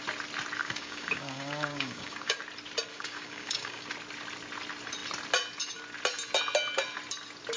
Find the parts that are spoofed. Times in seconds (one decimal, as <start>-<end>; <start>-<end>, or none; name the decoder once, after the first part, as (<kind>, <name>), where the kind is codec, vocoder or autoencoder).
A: 0.6-2.4 (codec, DAC); 2.9-3.9

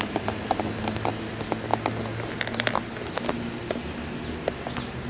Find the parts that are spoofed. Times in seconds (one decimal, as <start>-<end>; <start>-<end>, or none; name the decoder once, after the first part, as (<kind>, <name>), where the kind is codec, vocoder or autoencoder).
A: none